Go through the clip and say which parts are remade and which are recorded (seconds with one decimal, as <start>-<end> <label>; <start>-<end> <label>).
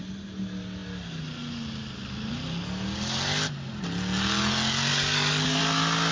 0.0-4.9 recorded; 4.9-5.6 remade; 5.6-6.1 recorded